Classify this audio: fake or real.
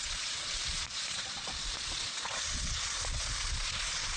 fake